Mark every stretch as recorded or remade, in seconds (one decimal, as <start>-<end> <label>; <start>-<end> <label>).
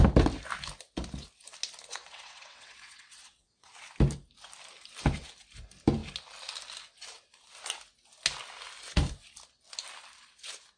0.0-1.9 recorded; 1.9-3.7 remade; 3.7-10.8 recorded